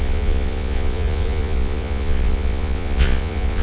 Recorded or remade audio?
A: remade